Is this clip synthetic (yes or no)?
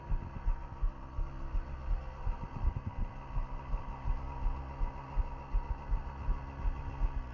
no